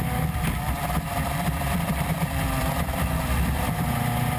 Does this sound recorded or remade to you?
remade